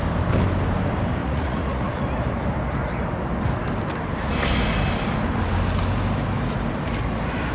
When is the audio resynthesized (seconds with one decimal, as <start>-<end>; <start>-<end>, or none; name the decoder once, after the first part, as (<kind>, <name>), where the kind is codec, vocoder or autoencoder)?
1.2-2.0 (vocoder, Vocos)